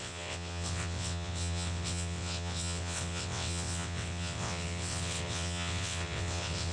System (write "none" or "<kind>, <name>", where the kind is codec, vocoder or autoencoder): vocoder, WaveNeXt